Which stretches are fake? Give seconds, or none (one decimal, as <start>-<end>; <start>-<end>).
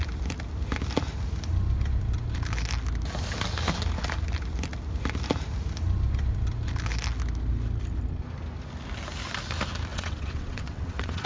9.9-11.3